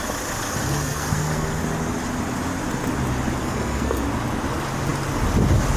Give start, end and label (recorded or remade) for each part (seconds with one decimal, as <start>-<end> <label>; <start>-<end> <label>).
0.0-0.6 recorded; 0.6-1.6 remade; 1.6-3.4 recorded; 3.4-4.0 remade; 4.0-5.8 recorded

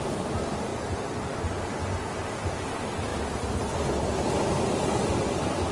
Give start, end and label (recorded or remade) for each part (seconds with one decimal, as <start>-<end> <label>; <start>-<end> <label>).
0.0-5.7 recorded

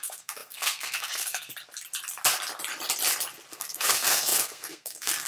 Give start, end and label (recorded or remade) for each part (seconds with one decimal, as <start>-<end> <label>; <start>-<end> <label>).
0.0-1.5 remade; 1.5-3.5 recorded; 3.5-5.3 remade